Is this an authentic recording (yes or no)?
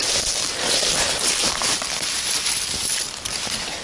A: yes